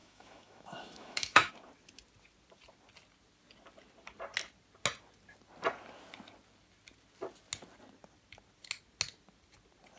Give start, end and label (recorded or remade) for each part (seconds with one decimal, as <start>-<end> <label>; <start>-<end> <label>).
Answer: 0.0-1.5 remade; 1.5-10.0 recorded